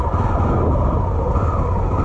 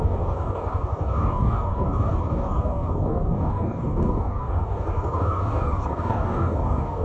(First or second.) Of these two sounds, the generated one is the second